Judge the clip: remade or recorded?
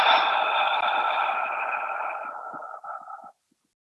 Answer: recorded